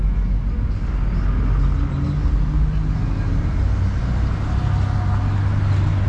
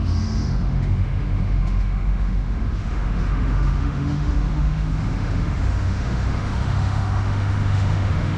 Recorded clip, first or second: first